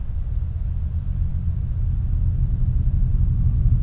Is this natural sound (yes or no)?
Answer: yes